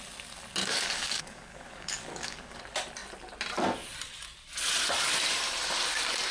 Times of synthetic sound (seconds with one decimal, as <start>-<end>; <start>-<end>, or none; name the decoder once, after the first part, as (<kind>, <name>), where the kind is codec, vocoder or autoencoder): 0.6-2.6 (codec, DAC)